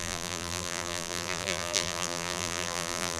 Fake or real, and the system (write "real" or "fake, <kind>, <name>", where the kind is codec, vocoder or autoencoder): fake, vocoder, BigVGAN v2